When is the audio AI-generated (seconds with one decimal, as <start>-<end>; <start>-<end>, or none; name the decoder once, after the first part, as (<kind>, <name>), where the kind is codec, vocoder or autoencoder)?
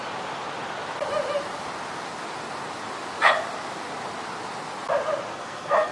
5.3-5.9 (codec, SNAC)